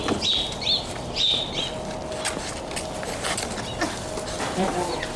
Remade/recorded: recorded